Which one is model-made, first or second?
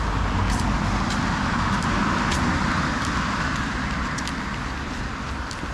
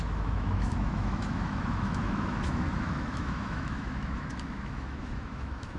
second